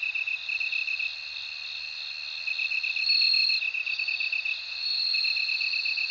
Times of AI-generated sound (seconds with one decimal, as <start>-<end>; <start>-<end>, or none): none